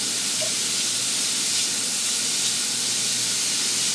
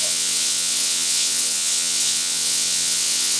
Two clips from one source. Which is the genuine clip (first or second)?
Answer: first